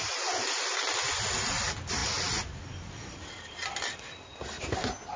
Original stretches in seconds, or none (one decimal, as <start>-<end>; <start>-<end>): 0.0-5.2